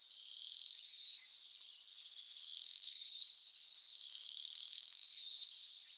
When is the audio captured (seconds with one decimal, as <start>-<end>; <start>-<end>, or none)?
0.0-1.9; 5.5-6.0